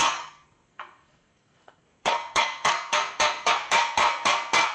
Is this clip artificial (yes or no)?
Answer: yes